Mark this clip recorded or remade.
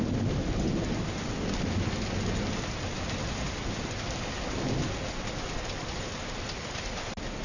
recorded